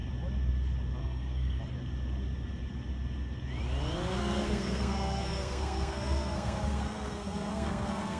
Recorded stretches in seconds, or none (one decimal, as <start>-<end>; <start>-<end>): 0.0-1.0; 1.6-4.2